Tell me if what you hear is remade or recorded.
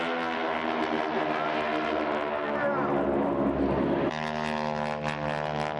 recorded